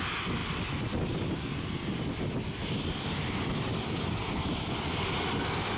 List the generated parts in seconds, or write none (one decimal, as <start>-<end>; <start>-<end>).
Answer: none